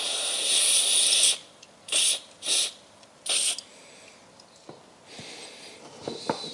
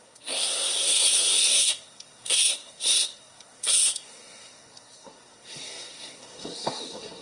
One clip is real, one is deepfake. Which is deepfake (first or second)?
second